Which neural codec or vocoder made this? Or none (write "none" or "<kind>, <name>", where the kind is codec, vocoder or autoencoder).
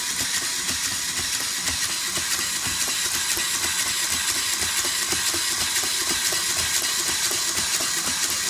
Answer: none